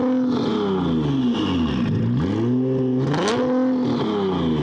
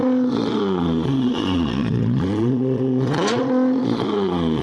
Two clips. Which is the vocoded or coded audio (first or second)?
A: second